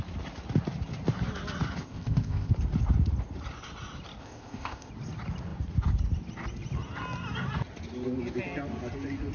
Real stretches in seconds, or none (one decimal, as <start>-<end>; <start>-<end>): 0.0-1.8; 2.5-4.2; 4.9-9.3

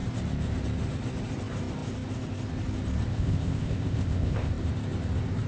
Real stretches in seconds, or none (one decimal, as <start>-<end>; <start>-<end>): 0.0-3.1; 4.5-5.5